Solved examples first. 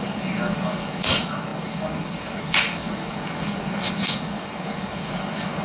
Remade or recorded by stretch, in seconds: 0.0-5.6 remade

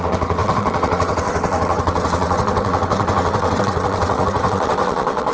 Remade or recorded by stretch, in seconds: 0.0-5.3 remade

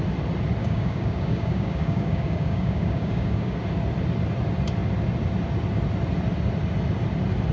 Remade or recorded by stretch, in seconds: 0.0-0.6 recorded; 0.6-3.6 remade; 3.6-7.5 recorded

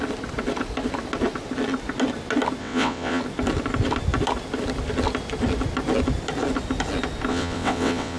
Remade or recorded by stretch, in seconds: 0.0-2.6 recorded; 2.6-3.2 remade; 3.2-7.3 recorded; 7.3-8.2 remade